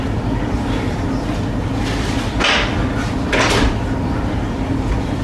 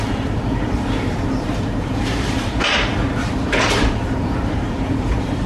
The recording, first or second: first